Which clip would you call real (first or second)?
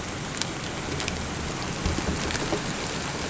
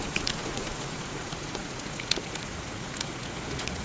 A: first